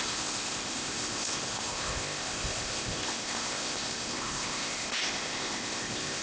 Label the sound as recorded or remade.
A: remade